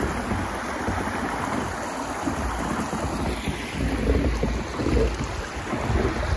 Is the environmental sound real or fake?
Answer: real